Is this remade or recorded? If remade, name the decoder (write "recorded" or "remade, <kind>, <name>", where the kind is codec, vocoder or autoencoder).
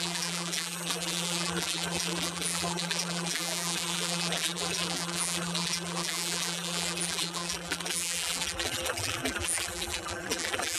remade, vocoder, BigVGAN v2